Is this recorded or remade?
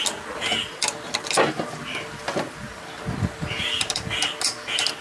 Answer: recorded